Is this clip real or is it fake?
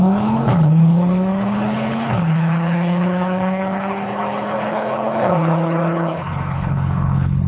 fake